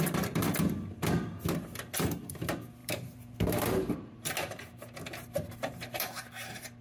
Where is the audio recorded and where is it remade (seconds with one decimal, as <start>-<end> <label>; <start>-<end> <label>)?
0.0-2.8 recorded; 2.8-6.8 remade